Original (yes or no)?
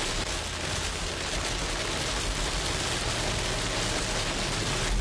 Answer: yes